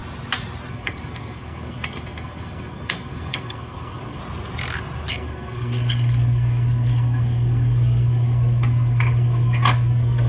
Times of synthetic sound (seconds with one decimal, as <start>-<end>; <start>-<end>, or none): 0.7-4.2; 5.1-10.3